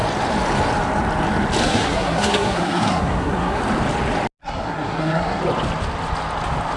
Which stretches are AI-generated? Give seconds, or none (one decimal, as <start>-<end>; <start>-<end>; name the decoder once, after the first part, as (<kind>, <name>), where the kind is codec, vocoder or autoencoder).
1.6-3.6 (codec, SNAC); 4.4-5.4